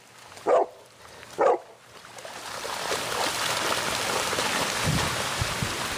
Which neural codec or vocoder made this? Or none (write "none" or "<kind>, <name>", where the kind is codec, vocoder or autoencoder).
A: none